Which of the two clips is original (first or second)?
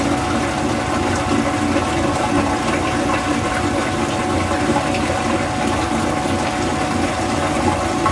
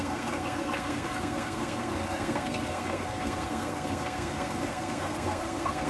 first